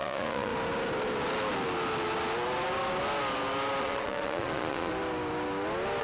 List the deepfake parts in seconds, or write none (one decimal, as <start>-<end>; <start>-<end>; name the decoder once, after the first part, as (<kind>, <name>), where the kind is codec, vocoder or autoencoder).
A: 0.0-0.5 (vocoder, Vocos); 3.8-4.9